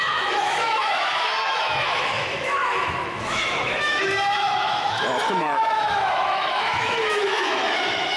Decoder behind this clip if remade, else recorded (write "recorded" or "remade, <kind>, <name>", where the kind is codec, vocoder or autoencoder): remade, autoencoder, DAC-VAE